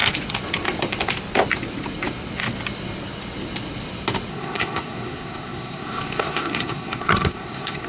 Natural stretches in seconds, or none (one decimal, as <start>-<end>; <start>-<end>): 0.0-4.3